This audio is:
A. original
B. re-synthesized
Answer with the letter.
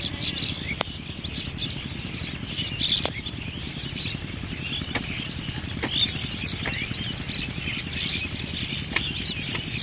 A